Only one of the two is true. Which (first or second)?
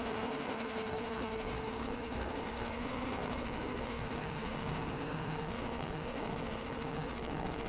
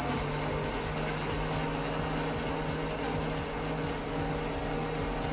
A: second